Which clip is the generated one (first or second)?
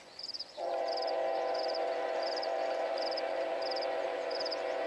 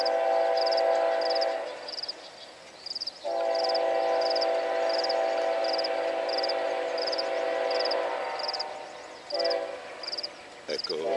first